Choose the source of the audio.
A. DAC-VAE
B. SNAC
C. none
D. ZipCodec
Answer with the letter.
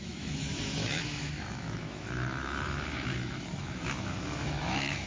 A